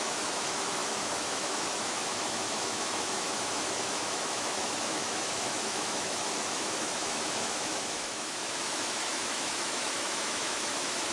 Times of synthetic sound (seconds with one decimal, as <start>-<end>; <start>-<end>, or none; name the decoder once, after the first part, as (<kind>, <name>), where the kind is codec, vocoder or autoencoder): 0.0-11.1 (autoencoder, DAC-VAE)